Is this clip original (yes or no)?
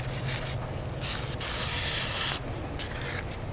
yes